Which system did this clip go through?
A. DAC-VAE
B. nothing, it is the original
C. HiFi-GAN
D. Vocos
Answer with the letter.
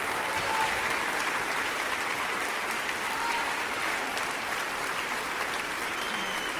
B